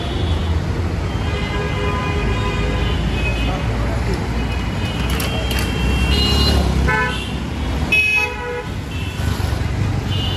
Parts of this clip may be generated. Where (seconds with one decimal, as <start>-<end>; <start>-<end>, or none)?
none

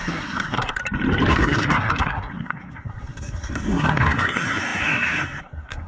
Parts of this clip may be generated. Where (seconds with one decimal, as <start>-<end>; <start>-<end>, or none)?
0.0-0.8; 1.3-5.9